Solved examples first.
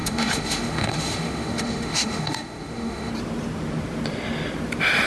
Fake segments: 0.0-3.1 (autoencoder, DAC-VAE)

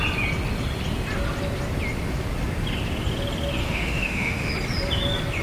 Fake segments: 3.6-4.5 (autoencoder, DAC-VAE)